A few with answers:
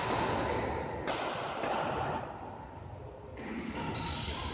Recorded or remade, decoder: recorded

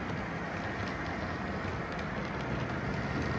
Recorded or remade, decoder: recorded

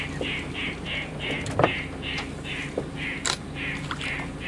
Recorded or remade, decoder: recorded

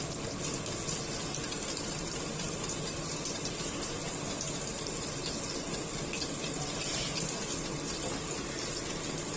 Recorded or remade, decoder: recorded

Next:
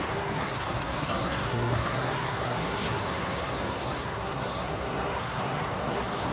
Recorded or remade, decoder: remade, codec, SNAC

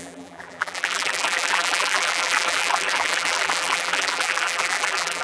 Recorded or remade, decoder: remade, vocoder, BigVGAN v2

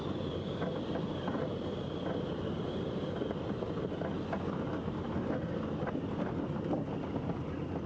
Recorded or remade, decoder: recorded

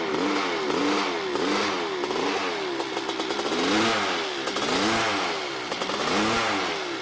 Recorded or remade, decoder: recorded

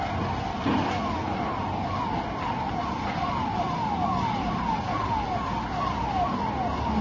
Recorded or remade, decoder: recorded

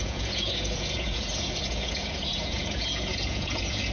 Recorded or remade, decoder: remade, vocoder, Vocos